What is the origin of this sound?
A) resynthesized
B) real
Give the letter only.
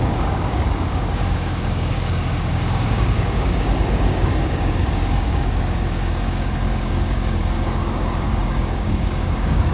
A